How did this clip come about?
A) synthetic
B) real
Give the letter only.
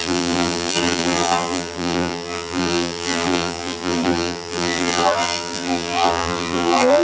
A